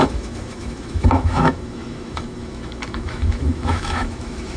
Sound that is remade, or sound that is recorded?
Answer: remade